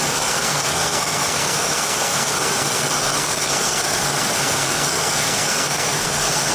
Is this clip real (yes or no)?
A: no